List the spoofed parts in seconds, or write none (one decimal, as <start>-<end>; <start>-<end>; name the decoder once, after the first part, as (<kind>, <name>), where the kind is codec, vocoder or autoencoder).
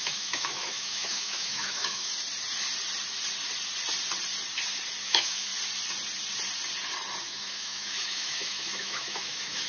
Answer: 0.0-2.1 (autoencoder, DAC-VAE); 5.0-5.5; 7.2-9.7